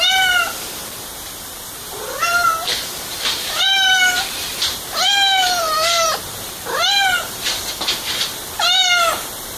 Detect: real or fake fake